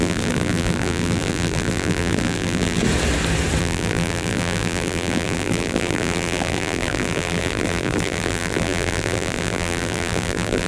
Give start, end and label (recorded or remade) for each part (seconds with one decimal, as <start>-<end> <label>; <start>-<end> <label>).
0.0-2.8 remade; 2.8-3.6 recorded; 3.6-10.7 remade